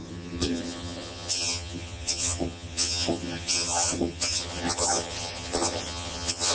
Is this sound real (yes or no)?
no